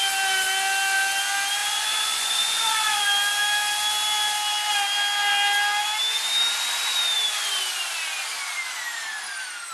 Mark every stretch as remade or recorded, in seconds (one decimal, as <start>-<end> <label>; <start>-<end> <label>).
0.0-1.6 recorded; 1.6-3.0 remade; 3.0-9.7 recorded